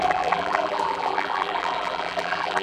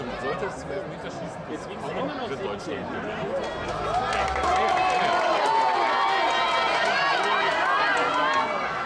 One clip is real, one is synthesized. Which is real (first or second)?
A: second